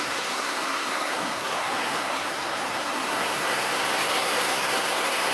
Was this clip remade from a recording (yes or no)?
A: yes